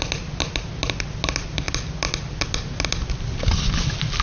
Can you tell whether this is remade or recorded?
recorded